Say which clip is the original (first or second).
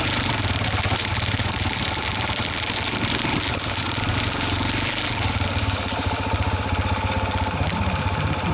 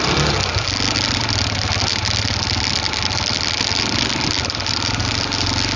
second